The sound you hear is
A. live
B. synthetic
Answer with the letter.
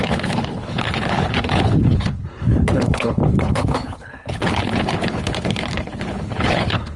B